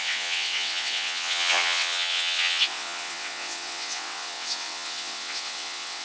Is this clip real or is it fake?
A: fake